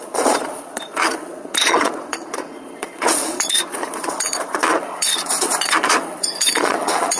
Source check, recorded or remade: remade